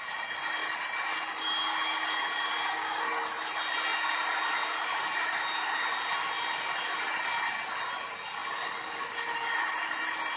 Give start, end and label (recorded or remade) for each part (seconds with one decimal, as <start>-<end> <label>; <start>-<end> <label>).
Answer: 0.0-2.7 recorded; 2.7-3.2 remade; 3.2-10.4 recorded